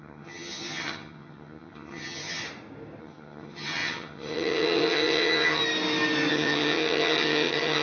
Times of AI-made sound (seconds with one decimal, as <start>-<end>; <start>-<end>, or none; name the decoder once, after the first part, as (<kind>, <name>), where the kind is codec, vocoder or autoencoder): 0.0-2.4 (vocoder, HiFi-GAN); 3.0-5.6; 6.3-7.8